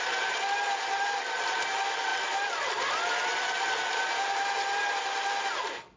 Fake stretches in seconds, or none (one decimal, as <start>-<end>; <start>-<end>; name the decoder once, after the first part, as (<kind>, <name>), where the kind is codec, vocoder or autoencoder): none